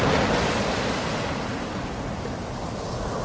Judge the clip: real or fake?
real